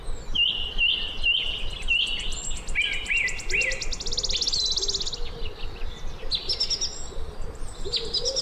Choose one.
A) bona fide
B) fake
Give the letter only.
A